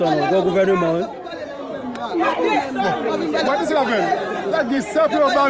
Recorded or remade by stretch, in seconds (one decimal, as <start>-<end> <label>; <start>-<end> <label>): 0.0-4.3 recorded; 4.3-5.1 remade; 5.1-5.5 recorded